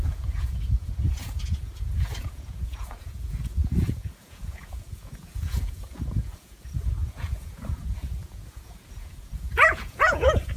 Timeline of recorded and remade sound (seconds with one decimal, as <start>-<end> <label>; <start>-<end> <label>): 0.0-10.6 remade